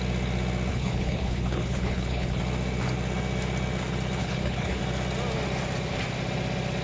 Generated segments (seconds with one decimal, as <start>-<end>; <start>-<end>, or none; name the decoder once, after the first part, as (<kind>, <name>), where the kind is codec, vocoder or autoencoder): 0.7-2.4 (codec, HILCodec); 4.2-4.8